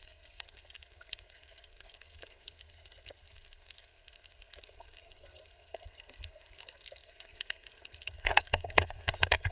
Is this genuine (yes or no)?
no